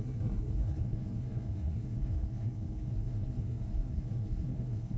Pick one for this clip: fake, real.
fake